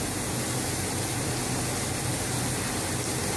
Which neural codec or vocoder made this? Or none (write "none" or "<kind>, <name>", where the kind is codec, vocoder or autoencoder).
none